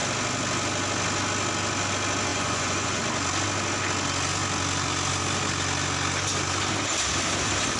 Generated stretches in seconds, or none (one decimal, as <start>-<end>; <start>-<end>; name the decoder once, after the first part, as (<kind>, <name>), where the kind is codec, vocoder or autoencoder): 2.3-3.0 (vocoder, Vocos)